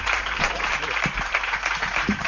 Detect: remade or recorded remade